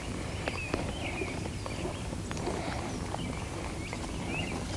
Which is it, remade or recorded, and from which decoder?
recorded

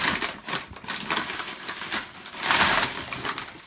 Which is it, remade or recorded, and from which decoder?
recorded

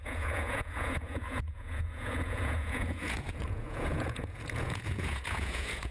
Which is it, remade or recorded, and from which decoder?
remade, vocoder, Vocos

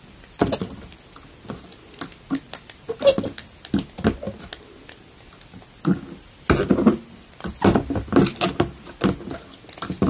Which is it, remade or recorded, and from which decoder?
recorded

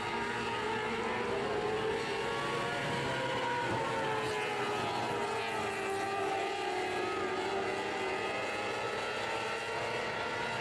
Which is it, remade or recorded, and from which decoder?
recorded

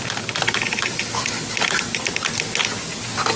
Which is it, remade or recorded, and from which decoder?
recorded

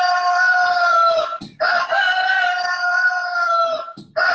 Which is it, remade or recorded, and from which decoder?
recorded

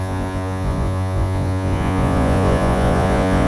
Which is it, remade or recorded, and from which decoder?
remade, vocoder, Vocos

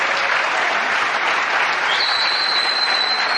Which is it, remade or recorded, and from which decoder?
recorded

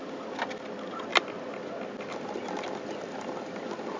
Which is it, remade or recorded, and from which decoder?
recorded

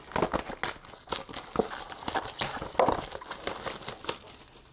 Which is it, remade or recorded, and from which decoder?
recorded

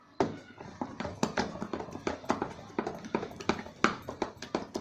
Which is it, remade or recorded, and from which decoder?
recorded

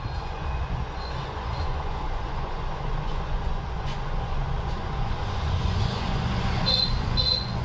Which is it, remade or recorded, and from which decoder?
remade, vocoder, Vocos